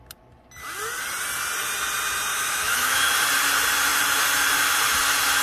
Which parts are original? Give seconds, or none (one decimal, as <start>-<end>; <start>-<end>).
0.0-2.3; 3.1-5.4